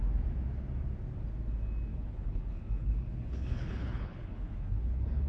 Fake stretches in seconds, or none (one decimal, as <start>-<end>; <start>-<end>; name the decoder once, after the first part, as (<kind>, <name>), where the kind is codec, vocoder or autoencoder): 1.9-5.3 (codec, HILCodec)